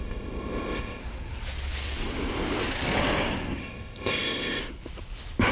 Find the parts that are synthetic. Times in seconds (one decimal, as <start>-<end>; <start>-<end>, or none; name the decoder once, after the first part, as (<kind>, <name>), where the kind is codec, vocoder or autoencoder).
0.0-1.0 (codec, ZipCodec); 3.6-4.6